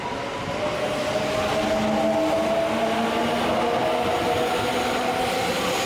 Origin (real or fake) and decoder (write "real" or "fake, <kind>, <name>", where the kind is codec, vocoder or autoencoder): real